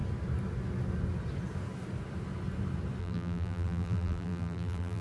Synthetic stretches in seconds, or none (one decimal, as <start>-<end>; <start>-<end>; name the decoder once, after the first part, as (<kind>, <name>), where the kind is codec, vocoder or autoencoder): 3.0-5.0 (vocoder, BigVGAN v2)